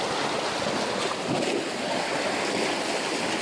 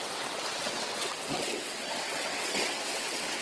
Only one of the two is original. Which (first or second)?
first